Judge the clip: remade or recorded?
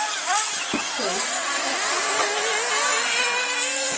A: recorded